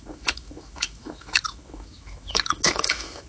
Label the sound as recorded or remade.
remade